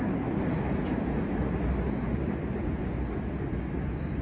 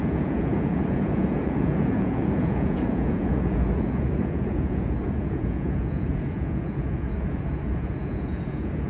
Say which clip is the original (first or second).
first